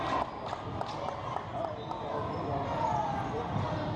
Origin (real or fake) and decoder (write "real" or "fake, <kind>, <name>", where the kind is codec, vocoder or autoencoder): real